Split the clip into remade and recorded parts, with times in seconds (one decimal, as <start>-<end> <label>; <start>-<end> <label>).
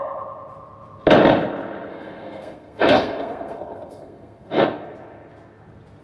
0.0-1.9 recorded; 1.9-4.6 remade; 4.6-6.0 recorded